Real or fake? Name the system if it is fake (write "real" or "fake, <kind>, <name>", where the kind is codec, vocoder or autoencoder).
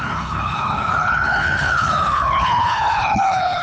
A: fake, codec, HILCodec